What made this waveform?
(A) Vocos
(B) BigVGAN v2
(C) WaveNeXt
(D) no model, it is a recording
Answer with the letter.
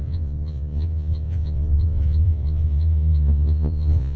A